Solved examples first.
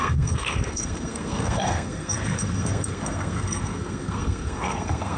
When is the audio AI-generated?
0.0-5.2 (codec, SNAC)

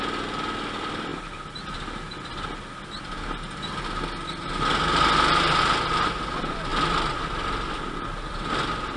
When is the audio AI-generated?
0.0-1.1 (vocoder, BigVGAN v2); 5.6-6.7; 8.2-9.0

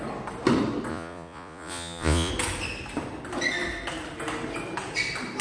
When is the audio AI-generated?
0.9-2.3 (vocoder, Vocos)

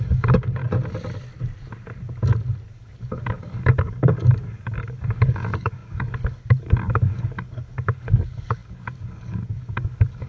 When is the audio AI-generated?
0.0-0.6 (codec, DAC); 2.7-10.3

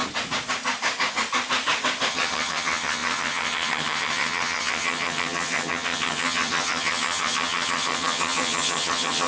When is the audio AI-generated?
2.1-9.3 (vocoder, HiFi-GAN)